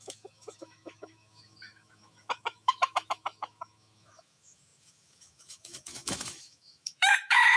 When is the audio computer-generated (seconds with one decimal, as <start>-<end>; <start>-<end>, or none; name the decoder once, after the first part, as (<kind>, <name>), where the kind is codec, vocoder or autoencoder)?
0.0-7.6 (autoencoder, DAC-VAE)